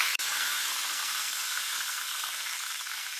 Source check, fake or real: fake